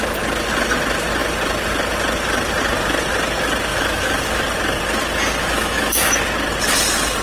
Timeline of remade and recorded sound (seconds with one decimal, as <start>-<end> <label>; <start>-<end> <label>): 0.0-3.7 recorded; 3.7-4.4 remade; 4.4-5.4 recorded; 5.4-6.2 remade; 6.2-7.2 recorded